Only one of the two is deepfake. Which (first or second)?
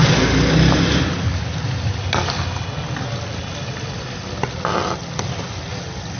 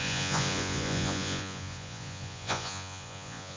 second